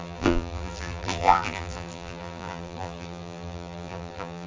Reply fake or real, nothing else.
fake